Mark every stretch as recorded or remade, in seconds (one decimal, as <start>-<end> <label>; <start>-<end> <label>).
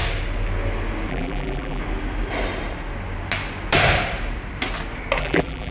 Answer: 0.0-1.1 recorded; 1.1-1.8 remade; 1.8-5.2 recorded; 5.2-5.7 remade